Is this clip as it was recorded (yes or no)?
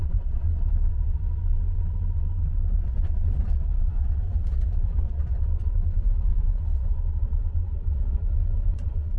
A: no